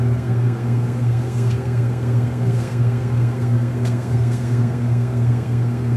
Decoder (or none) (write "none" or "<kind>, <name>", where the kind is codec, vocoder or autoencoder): codec, SNAC